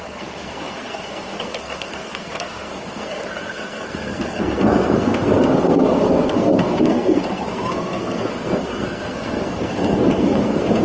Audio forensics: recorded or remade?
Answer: remade